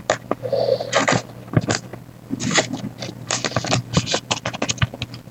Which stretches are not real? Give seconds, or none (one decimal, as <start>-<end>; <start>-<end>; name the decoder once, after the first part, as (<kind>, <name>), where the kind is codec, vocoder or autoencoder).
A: none